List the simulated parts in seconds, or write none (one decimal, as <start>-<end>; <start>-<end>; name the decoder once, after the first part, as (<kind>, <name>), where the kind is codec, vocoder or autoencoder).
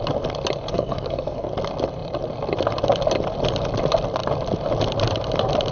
0.7-1.5 (codec, SNAC)